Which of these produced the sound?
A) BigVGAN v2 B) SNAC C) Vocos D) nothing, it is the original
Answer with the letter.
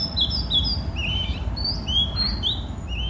D